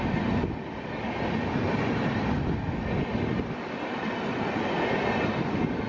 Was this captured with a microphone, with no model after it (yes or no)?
no